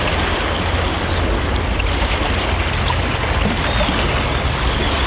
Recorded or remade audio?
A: recorded